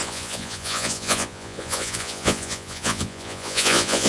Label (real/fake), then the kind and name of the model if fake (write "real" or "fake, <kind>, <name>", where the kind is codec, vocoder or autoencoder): fake, vocoder, Vocos